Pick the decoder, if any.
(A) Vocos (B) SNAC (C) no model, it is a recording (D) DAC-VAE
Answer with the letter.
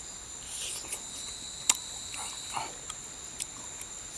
C